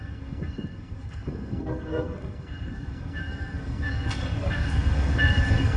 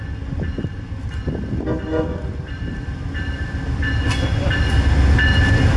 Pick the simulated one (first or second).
first